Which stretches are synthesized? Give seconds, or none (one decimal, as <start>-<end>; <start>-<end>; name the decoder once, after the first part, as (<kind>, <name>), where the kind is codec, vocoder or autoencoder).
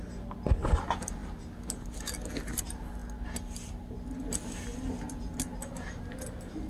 3.0-4.3 (vocoder, BigVGAN v2); 5.5-6.7